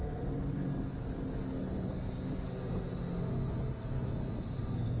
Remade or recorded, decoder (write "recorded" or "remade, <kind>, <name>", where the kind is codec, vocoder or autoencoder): recorded